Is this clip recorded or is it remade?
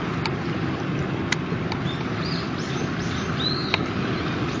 recorded